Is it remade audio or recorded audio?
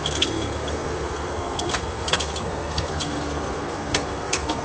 remade